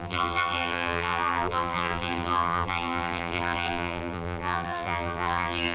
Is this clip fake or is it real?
fake